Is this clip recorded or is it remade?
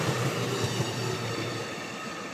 recorded